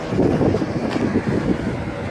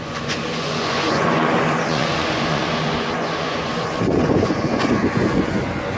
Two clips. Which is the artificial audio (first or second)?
second